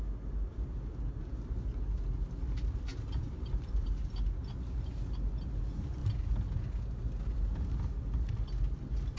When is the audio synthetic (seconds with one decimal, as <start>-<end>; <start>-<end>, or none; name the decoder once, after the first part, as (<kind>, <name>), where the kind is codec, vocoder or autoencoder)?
2.9-3.9 (vocoder, BigVGAN v2); 4.4-5.0